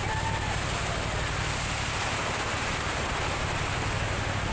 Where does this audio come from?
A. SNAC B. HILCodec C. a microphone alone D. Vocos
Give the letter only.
C